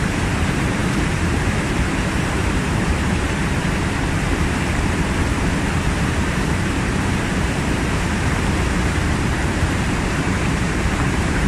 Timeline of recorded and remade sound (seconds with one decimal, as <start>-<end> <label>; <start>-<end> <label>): 0.0-3.4 remade; 3.4-6.2 recorded; 6.2-11.5 remade

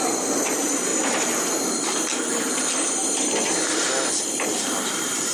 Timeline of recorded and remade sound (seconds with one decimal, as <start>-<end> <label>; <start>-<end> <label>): 0.0-0.9 remade; 0.9-4.1 recorded; 4.1-5.3 remade

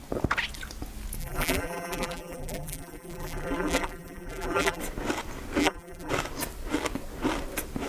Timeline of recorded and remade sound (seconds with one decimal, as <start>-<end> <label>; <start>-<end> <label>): 0.0-1.2 recorded; 1.2-4.8 remade; 4.8-5.6 recorded; 5.6-6.1 remade; 6.1-7.9 recorded

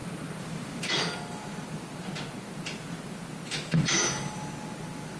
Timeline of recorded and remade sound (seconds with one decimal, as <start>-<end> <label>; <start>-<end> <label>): 0.0-0.9 remade; 0.9-5.2 recorded